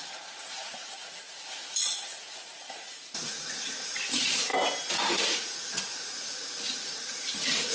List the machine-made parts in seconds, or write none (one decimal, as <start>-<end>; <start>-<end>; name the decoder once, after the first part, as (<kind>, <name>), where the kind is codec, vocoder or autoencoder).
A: 0.0-4.5 (vocoder, Vocos); 5.1-7.7